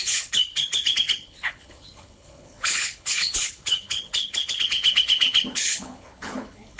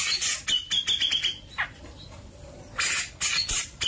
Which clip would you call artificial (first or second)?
first